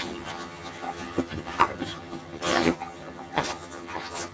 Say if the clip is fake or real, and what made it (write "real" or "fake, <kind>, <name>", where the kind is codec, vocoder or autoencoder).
fake, vocoder, HiFi-GAN